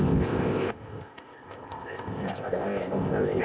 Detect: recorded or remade remade